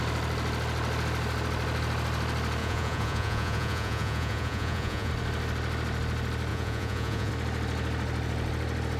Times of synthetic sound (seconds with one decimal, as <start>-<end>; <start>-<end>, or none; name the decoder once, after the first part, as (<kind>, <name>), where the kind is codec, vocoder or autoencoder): 2.6-5.1 (vocoder, Vocos); 6.5-7.3